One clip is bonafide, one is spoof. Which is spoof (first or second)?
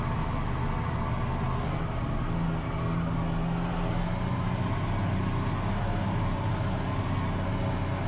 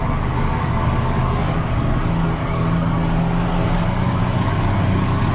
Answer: second